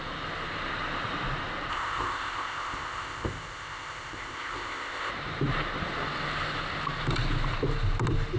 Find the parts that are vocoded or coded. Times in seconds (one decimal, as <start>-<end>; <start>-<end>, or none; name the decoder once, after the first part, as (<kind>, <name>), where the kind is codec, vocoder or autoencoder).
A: 1.7-5.1 (codec, ZipCodec)